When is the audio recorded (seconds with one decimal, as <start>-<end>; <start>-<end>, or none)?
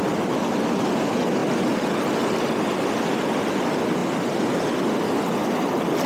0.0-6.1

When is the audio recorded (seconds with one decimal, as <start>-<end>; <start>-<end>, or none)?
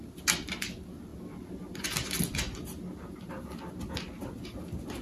0.0-5.0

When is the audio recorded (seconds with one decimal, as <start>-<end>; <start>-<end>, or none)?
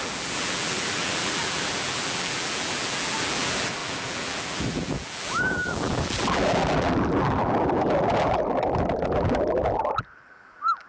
none